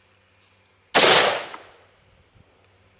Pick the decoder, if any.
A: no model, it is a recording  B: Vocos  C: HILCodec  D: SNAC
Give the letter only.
A